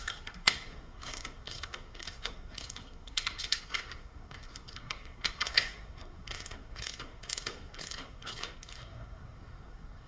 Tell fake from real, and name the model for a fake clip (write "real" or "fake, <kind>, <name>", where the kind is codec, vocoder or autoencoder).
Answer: fake, codec, SNAC